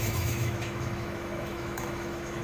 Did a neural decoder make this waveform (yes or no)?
yes